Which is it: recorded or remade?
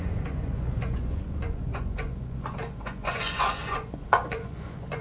remade